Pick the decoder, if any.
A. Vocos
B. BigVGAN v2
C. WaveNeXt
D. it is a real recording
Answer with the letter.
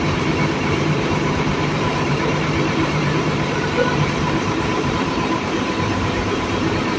B